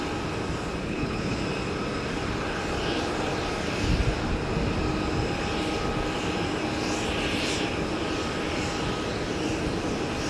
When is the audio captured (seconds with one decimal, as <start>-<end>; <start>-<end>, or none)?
0.0-0.8; 1.4-10.3